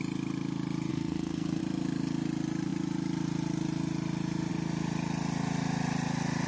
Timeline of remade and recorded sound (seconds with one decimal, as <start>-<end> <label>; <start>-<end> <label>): 0.0-0.9 recorded; 0.9-1.6 remade; 1.6-6.5 recorded